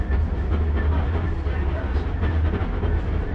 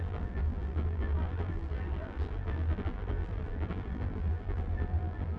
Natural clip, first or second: first